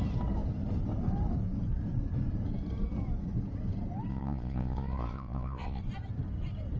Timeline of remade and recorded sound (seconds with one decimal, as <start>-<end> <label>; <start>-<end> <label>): 0.0-4.1 recorded; 4.1-5.8 remade; 5.8-6.8 recorded